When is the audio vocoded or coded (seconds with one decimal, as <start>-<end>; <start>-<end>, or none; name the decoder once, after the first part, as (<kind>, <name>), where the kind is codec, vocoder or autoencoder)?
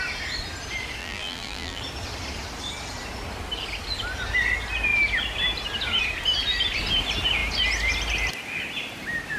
1.0-1.8 (vocoder, BigVGAN v2)